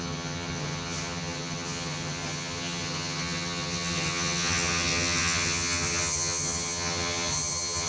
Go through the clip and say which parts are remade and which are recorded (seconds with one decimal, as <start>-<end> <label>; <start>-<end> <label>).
0.0-7.9 remade